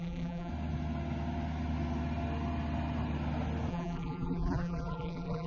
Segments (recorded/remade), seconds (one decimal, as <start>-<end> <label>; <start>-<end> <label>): 0.0-0.5 remade; 0.5-3.7 recorded; 3.7-5.5 remade